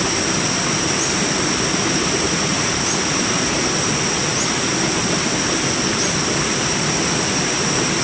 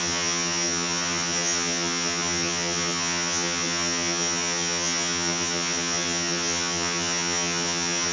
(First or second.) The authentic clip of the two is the first